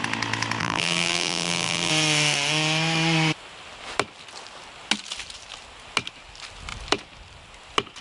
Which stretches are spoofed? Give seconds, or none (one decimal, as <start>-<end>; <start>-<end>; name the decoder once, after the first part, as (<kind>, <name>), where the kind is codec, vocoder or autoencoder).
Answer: 0.6-1.9 (vocoder, BigVGAN v2)